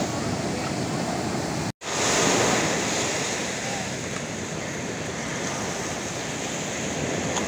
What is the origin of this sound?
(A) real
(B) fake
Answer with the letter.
A